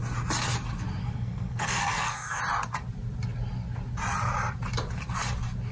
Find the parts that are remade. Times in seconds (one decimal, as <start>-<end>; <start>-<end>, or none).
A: 1.0-2.4